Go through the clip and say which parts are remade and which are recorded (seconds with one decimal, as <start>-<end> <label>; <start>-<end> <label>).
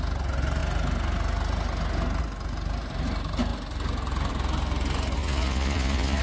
0.0-5.2 recorded; 5.2-6.2 remade